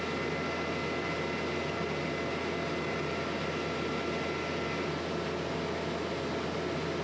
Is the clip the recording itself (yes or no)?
yes